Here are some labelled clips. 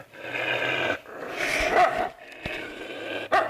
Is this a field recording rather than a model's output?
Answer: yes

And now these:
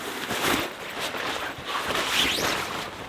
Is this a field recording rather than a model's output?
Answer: yes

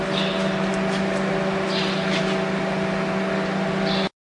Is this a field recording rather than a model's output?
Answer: yes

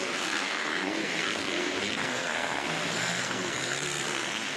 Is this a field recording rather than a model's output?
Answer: no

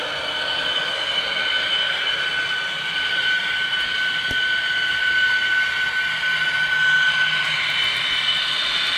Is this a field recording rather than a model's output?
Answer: yes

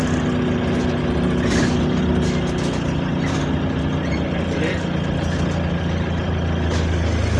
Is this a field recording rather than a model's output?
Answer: yes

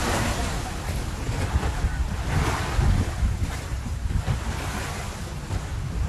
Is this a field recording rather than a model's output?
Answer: yes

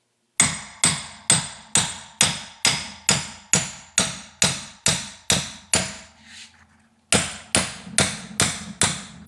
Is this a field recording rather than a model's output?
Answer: yes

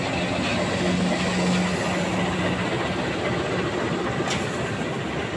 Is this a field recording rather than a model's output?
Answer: yes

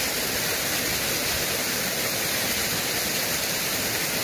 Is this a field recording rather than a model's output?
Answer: yes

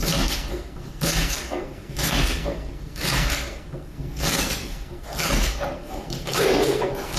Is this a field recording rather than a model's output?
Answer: no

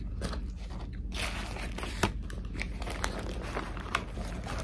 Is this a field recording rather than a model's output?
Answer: yes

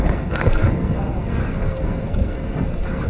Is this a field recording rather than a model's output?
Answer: no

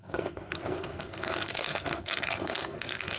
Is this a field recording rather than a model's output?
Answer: no